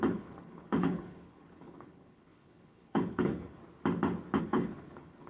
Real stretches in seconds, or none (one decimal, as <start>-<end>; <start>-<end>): 3.6-4.4